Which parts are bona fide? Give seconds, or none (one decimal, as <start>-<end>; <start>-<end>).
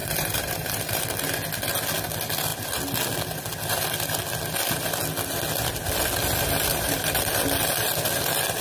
1.0-6.7; 7.2-8.6